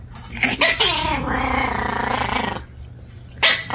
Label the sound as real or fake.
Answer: real